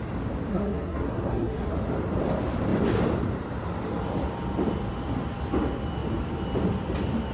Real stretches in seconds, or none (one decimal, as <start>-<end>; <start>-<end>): 0.0-0.5; 1.7-7.3